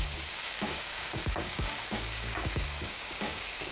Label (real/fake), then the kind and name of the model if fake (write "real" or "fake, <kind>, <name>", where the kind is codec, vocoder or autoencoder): fake, codec, DAC